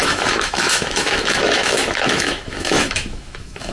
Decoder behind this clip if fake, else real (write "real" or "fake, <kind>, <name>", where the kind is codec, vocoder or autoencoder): fake, autoencoder, DAC-VAE